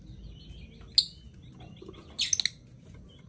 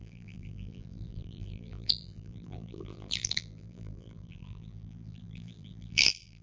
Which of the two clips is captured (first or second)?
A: first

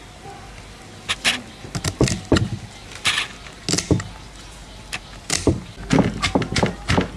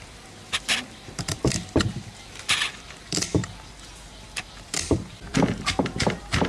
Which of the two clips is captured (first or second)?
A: first